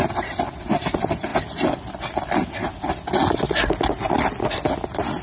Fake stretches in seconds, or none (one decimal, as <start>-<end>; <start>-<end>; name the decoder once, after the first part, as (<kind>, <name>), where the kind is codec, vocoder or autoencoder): none